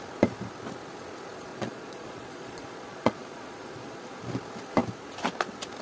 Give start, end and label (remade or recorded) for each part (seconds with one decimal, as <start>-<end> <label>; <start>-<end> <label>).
0.0-1.5 recorded; 1.5-4.2 remade; 4.2-5.8 recorded

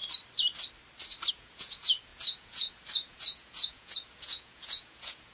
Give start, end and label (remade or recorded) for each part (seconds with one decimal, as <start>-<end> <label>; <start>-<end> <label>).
0.0-1.3 recorded; 1.3-5.3 remade

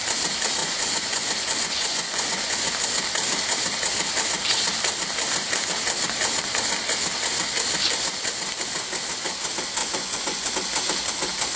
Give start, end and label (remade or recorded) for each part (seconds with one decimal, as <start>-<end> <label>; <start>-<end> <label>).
0.0-0.6 recorded; 0.6-2.7 remade; 2.7-9.8 recorded; 9.8-10.5 remade; 10.5-11.6 recorded

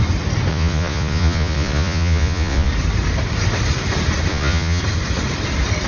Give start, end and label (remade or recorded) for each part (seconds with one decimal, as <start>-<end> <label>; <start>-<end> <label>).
0.0-0.5 recorded; 0.5-2.7 remade; 2.7-4.3 recorded; 4.3-4.8 remade; 4.8-5.9 recorded